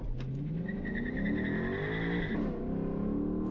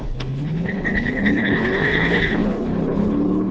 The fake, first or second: second